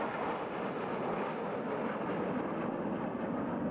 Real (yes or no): no